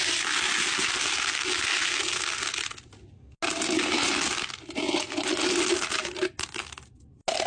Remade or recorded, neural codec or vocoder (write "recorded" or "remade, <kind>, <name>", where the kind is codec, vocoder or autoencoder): recorded